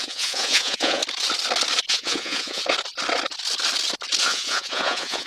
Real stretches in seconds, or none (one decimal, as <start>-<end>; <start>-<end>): 1.0-1.9; 2.6-4.2